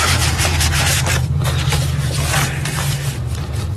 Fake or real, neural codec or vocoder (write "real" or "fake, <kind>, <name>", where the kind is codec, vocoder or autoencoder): fake, vocoder, BigVGAN v2